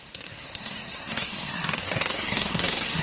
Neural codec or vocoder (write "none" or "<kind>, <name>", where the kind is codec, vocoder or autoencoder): codec, SNAC